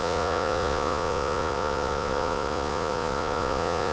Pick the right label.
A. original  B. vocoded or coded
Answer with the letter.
B